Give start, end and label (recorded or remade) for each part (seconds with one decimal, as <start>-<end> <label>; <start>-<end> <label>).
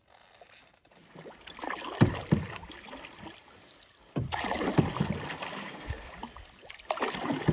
0.0-5.6 recorded; 5.6-6.1 remade; 6.1-7.5 recorded